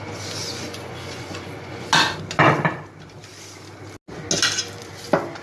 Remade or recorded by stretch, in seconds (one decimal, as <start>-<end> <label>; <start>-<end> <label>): 0.0-0.4 recorded; 0.4-1.9 remade; 1.9-5.4 recorded